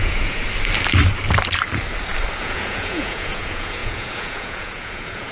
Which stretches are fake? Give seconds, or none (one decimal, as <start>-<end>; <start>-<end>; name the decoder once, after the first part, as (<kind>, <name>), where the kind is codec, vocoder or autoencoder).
0.0-0.4 (vocoder, Vocos); 2.4-5.3